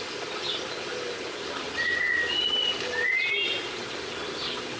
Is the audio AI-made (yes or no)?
no